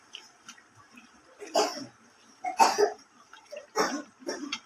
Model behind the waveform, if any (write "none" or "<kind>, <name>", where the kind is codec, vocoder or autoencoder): vocoder, BigVGAN v2